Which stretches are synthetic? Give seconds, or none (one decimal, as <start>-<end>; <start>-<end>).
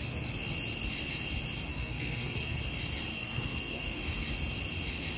1.7-2.6; 3.1-4.0